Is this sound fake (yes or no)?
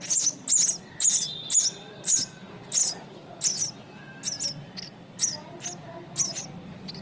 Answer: no